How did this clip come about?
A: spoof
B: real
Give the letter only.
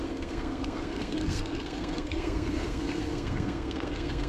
A